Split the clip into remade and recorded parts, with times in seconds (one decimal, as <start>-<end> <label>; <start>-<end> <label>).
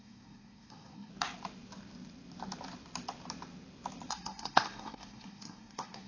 0.0-1.1 remade; 1.1-4.1 recorded; 4.1-6.1 remade